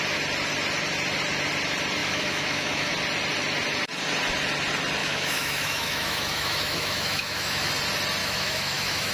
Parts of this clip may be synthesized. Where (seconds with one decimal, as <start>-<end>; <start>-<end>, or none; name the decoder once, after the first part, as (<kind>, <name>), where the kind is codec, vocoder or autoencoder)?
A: 2.0-2.9 (autoencoder, DAC-VAE); 5.0-7.7; 8.2-9.1